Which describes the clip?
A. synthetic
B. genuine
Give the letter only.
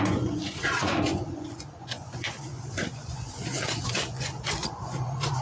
A